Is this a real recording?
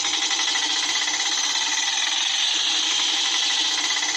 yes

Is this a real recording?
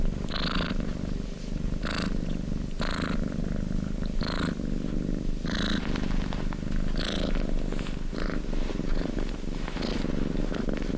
yes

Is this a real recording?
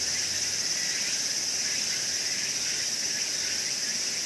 yes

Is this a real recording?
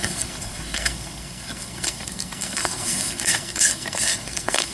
no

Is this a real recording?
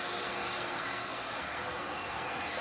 no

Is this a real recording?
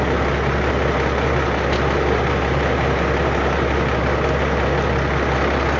yes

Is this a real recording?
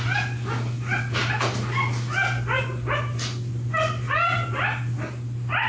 yes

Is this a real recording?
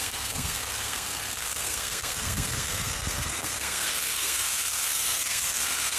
no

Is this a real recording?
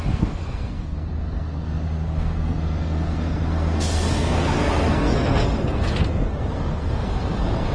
no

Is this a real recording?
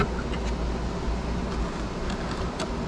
yes